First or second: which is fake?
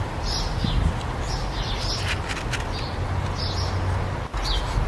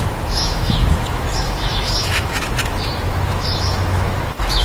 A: second